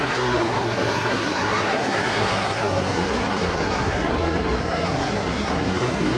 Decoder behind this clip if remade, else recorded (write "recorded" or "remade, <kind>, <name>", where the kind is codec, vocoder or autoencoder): remade, codec, SNAC